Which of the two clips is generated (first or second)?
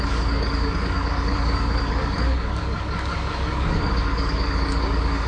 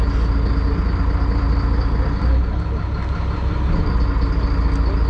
first